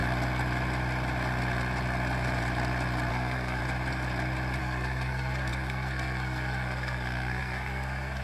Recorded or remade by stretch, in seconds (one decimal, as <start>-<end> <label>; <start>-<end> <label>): 0.0-3.1 recorded; 3.1-3.6 remade; 3.6-4.6 recorded; 4.6-8.2 remade